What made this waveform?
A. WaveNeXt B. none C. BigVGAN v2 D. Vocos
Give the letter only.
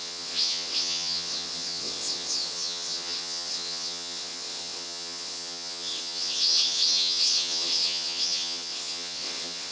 A